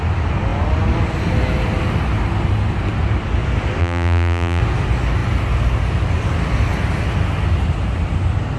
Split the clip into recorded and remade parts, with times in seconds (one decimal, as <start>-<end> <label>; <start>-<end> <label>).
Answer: 0.0-3.8 recorded; 3.8-4.6 remade; 4.6-8.6 recorded